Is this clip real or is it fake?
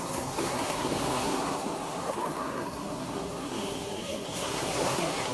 fake